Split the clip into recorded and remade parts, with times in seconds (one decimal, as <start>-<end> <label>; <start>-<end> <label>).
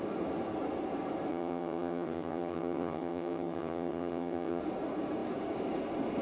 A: 0.0-1.3 recorded; 1.3-4.6 remade; 4.6-6.2 recorded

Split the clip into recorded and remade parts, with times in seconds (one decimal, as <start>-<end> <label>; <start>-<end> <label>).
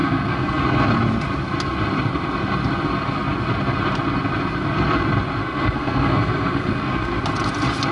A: 0.0-0.6 remade; 0.6-5.4 recorded; 5.4-7.2 remade; 7.2-7.9 recorded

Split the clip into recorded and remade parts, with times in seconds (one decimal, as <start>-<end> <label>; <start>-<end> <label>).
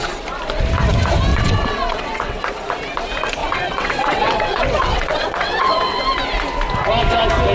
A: 0.0-1.3 recorded; 1.3-2.4 remade; 2.4-3.4 recorded; 3.4-6.0 remade; 6.0-7.5 recorded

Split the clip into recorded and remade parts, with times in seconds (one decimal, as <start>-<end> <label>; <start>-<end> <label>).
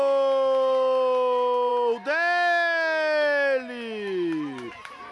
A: 0.0-5.1 recorded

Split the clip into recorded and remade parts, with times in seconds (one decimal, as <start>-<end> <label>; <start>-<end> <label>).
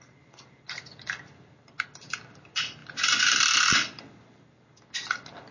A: 0.0-5.5 recorded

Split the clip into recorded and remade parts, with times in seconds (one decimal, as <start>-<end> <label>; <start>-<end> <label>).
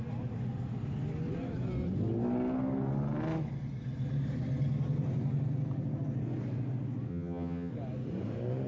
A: 0.0-7.1 recorded; 7.1-7.7 remade; 7.7-8.7 recorded